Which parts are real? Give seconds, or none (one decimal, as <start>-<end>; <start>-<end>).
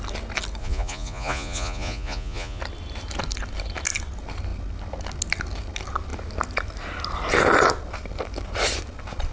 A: 0.0-0.6; 2.6-9.3